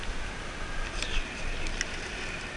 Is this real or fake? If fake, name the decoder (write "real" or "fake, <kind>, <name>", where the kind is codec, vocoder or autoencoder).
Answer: real